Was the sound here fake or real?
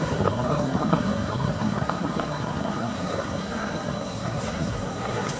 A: fake